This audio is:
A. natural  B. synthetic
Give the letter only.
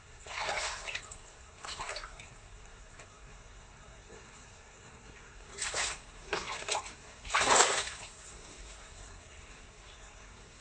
B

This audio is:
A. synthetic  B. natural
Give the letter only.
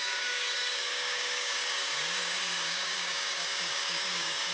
A